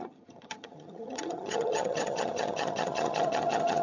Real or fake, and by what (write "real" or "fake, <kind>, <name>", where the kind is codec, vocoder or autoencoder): fake, vocoder, HiFi-GAN